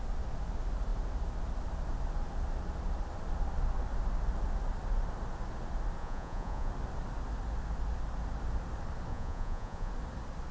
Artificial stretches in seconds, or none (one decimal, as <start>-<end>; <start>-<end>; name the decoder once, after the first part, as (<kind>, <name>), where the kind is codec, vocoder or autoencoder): 6.0-6.7 (vocoder, Vocos); 9.1-9.9